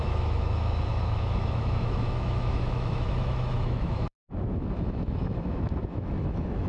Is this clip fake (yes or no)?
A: yes